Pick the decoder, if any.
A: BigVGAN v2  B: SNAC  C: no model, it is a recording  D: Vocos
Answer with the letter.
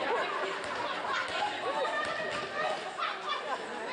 C